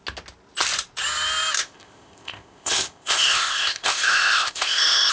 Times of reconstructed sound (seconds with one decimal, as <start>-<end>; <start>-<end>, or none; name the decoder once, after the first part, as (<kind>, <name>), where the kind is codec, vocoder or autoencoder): 1.6-5.1 (codec, ZipCodec)